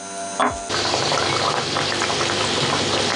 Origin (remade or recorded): recorded